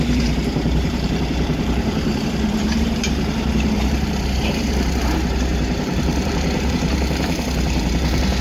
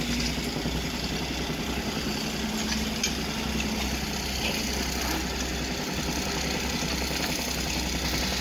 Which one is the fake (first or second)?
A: first